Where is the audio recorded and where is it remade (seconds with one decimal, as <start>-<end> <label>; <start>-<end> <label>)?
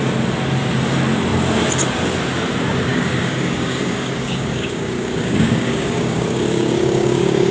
0.0-2.9 recorded; 2.9-7.5 remade